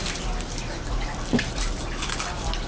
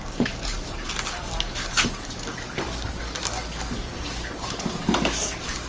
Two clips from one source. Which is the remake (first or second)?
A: second